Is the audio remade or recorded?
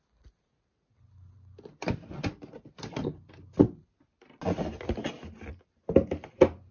recorded